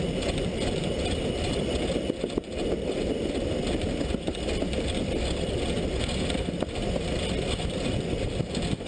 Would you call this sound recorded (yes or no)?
yes